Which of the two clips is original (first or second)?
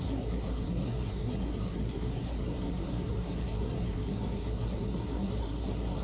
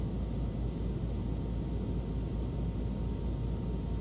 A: second